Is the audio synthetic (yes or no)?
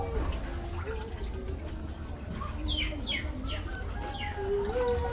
no